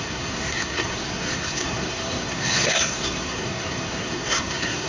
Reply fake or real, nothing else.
fake